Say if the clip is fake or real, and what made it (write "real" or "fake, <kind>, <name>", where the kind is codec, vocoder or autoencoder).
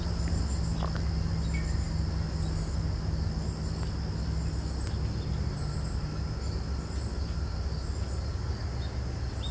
real